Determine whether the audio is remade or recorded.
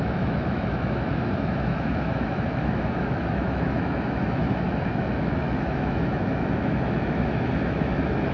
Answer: remade